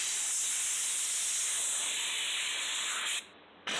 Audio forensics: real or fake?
real